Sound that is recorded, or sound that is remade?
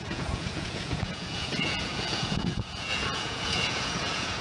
remade